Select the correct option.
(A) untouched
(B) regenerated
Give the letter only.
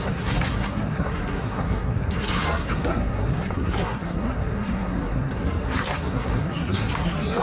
B